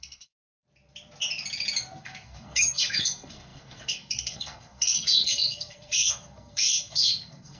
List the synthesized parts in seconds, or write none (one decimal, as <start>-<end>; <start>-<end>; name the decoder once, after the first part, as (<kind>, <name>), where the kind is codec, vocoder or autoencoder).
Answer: 0.0-0.4 (codec, SNAC); 2.0-7.6